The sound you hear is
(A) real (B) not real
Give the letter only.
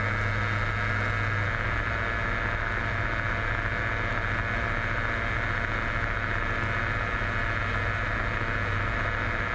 A